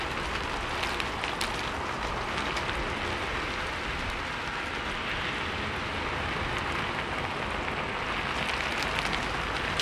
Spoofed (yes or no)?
no